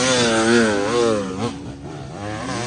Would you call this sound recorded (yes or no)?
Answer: yes